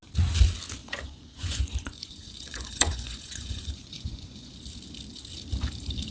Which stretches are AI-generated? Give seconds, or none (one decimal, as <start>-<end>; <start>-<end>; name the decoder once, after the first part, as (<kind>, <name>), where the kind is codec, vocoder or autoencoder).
0.8-4.5 (vocoder, Vocos)